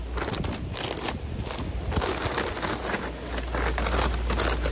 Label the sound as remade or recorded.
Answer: recorded